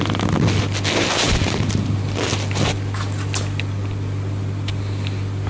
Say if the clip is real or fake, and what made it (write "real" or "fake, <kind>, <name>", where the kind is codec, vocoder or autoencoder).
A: real